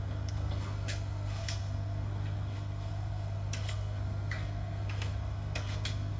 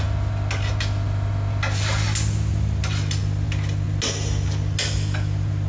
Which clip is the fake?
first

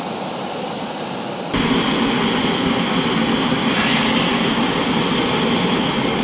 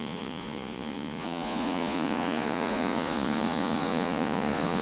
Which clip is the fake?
second